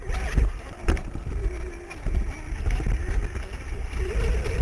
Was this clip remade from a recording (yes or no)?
no